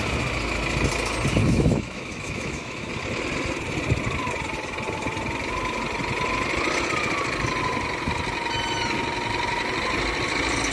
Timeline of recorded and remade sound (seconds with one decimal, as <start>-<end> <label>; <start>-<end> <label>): 0.0-1.4 recorded; 1.4-2.9 remade; 2.9-10.7 recorded